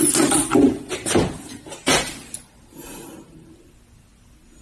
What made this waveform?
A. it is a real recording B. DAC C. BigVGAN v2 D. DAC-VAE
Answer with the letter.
A